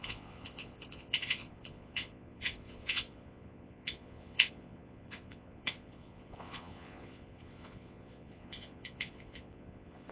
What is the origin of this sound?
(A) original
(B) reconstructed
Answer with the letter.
B